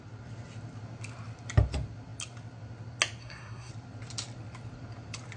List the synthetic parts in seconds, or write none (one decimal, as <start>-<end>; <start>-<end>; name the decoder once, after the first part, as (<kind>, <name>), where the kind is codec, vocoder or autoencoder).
3.2-3.7 (codec, SNAC)